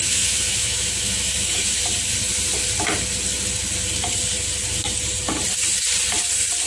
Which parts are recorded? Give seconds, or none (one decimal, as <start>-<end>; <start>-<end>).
1.8-6.7